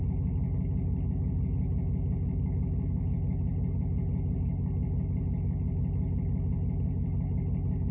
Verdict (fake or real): real